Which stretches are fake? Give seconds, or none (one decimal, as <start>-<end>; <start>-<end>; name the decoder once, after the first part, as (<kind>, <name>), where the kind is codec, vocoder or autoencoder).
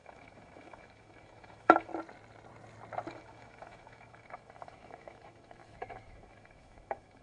0.0-1.9 (autoencoder, DAC-VAE); 3.1-7.2